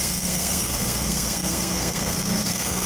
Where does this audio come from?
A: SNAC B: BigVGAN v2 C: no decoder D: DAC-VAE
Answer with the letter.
A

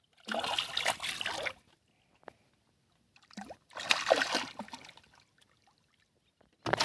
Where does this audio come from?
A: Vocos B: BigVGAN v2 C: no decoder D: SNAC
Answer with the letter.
C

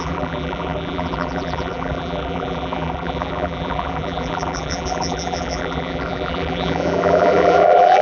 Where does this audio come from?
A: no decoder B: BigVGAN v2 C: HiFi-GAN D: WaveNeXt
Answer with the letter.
B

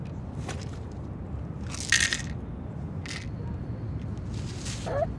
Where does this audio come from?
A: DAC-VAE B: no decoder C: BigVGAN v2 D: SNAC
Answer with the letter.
B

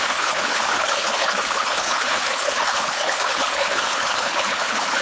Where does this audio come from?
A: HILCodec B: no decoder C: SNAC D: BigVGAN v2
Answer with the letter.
A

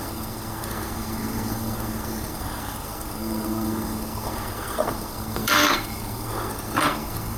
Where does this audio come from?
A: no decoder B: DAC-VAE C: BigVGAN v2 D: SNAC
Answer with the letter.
D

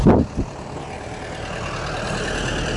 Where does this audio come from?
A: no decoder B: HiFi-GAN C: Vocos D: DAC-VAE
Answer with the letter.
A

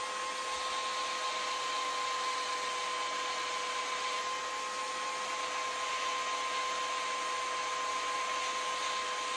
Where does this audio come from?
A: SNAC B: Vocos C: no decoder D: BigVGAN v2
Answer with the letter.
C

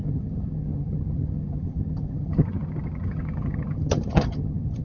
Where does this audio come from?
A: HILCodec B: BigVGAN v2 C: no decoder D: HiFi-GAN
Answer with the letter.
D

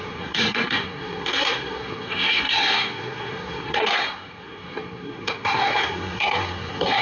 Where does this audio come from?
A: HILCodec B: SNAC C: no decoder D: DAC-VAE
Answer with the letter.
B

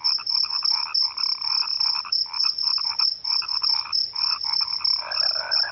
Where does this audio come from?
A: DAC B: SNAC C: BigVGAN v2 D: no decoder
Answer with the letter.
D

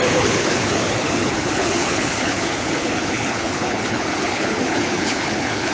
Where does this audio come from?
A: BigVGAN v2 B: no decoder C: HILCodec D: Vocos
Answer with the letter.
C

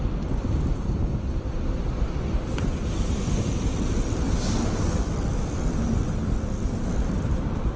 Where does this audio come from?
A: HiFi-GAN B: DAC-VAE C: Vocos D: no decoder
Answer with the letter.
D